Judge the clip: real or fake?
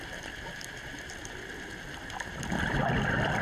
fake